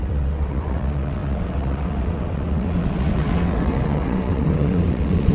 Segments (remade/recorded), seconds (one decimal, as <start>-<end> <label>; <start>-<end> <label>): 0.0-5.3 remade